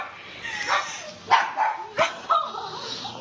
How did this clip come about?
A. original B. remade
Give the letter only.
A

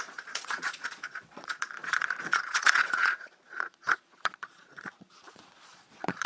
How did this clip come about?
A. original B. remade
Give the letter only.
B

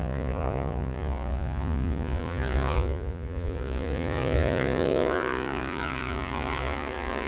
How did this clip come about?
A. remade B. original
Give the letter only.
A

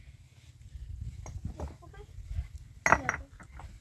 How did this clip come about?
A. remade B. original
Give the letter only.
B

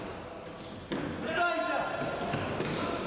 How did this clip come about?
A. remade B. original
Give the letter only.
B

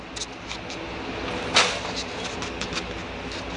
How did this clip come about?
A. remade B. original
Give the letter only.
B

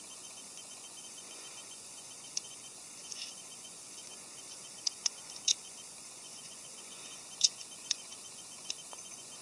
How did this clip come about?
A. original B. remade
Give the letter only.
B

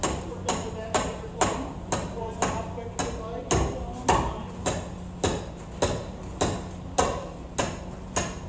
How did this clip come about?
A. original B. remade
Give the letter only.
A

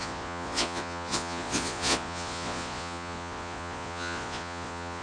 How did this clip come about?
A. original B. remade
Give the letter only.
B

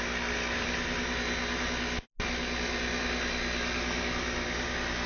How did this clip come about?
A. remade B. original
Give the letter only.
B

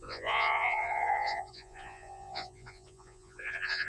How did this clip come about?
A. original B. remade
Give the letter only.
B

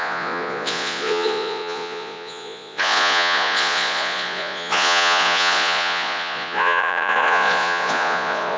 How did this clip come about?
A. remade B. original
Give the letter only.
A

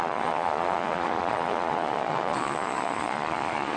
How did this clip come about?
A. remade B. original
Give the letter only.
A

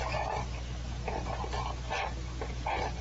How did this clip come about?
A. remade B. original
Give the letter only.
B